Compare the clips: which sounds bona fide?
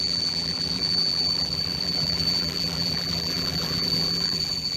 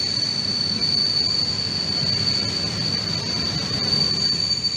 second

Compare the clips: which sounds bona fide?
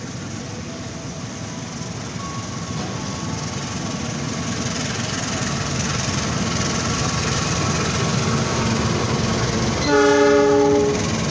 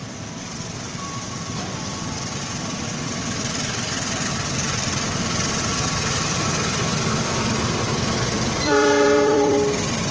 first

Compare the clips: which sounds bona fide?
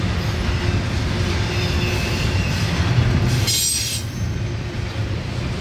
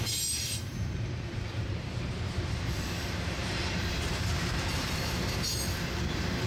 first